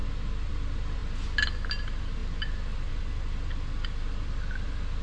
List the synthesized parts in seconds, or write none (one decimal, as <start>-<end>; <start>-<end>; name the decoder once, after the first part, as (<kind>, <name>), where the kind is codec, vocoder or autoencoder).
none